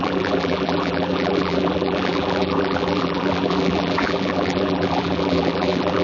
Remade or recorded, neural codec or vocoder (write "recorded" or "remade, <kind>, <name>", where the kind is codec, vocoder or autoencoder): remade, vocoder, BigVGAN v2